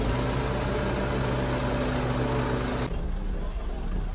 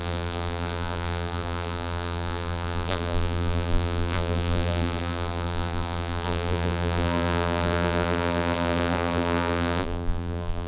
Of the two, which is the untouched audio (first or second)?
first